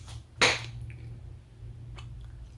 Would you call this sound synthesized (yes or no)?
no